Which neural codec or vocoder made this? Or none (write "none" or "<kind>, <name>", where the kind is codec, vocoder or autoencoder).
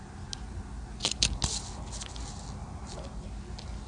none